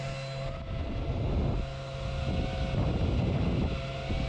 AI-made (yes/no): no